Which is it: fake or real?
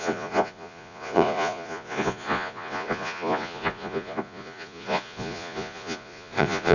fake